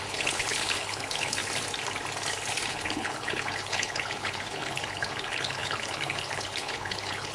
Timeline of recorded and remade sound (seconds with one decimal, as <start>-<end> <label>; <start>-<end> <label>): 0.0-1.4 remade; 1.4-2.7 recorded; 2.7-7.3 remade